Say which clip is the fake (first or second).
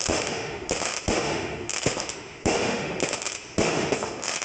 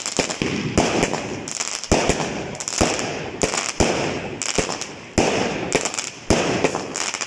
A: first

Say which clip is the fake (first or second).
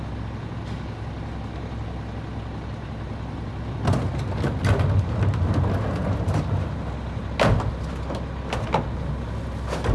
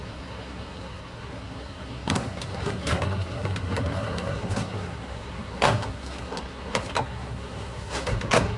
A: second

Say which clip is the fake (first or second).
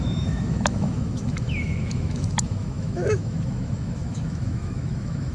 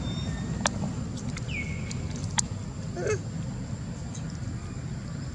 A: first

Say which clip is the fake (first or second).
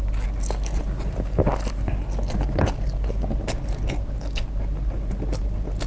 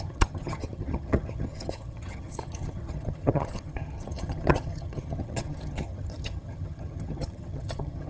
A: second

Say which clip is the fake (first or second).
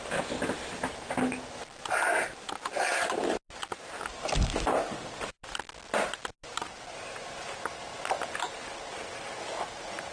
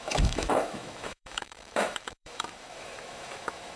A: second